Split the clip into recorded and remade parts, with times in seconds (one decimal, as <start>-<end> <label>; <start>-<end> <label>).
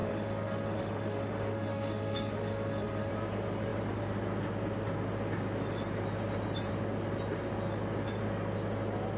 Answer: 0.0-3.1 remade; 3.1-9.2 recorded